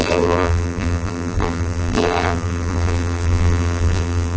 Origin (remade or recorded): remade